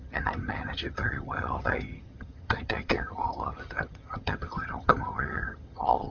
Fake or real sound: fake